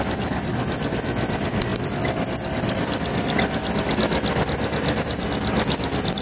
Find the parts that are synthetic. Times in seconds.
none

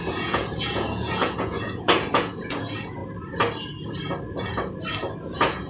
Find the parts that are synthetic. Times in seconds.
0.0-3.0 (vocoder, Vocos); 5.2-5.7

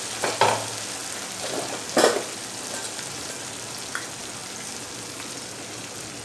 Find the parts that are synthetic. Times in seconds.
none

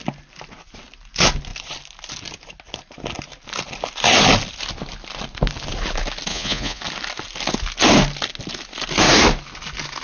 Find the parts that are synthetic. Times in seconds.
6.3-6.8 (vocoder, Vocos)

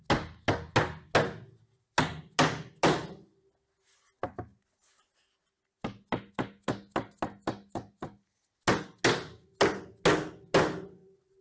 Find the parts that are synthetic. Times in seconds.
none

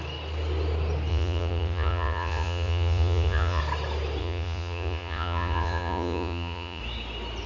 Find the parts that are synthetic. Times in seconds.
1.1-3.6 (vocoder, Vocos); 4.2-6.8

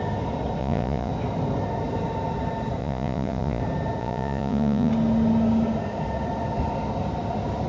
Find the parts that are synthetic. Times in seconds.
0.6-1.1 (vocoder, Vocos); 2.8-3.6; 4.0-4.9